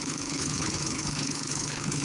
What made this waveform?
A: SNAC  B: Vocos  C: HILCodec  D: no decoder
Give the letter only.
C